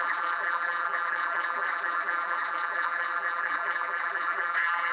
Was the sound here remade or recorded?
remade